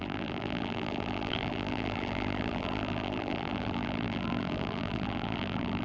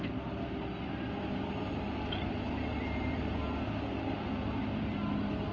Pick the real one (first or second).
second